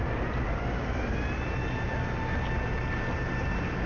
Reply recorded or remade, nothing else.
recorded